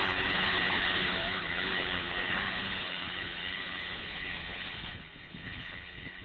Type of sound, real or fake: fake